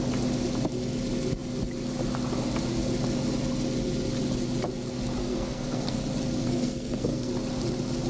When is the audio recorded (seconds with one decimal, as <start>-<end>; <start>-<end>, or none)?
0.0-5.2; 6.0-6.4; 7.3-8.1